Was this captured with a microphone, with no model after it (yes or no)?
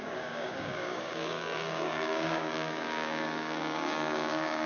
no